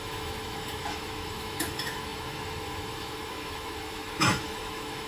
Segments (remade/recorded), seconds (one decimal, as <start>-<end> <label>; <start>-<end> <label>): 0.0-5.1 remade